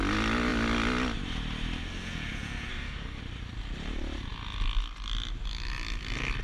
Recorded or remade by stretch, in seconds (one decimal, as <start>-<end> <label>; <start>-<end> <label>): 0.0-2.7 recorded; 2.7-3.2 remade; 3.2-6.4 recorded